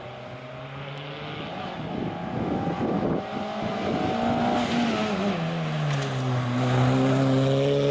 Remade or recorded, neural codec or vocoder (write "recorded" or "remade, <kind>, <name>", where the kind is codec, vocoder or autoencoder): recorded